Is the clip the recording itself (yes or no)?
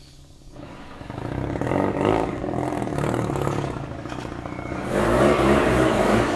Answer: no